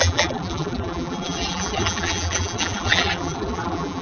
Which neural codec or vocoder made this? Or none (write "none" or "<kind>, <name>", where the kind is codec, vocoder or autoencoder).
vocoder, BigVGAN v2